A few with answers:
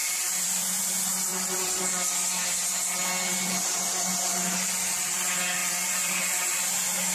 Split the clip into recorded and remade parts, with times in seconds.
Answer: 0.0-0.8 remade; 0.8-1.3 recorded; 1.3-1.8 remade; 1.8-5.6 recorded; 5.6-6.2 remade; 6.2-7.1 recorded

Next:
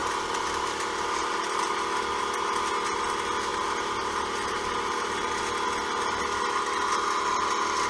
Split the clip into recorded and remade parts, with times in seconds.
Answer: 0.0-1.8 remade; 1.8-3.5 recorded; 3.5-5.4 remade; 5.4-7.9 recorded

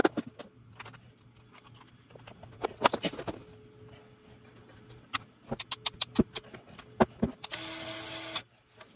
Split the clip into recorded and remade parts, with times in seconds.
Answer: 0.0-9.0 recorded

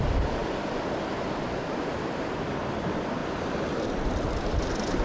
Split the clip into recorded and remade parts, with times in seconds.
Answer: 0.0-5.0 remade

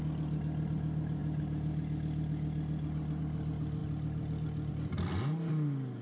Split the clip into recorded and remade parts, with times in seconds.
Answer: 0.0-6.0 recorded

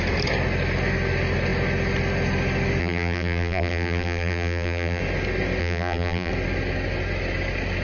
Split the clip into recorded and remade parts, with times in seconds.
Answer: 0.0-2.8 recorded; 2.8-5.0 remade; 5.0-5.6 recorded; 5.6-6.3 remade; 6.3-7.8 recorded

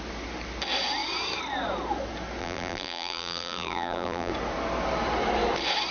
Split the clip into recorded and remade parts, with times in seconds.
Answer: 0.0-2.4 recorded; 2.4-4.3 remade; 4.3-5.9 recorded